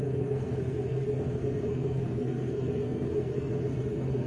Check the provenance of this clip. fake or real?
fake